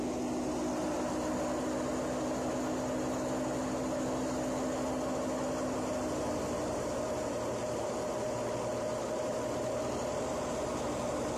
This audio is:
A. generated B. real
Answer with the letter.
B